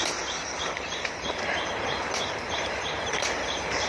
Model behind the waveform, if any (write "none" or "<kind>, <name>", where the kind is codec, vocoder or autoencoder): vocoder, BigVGAN v2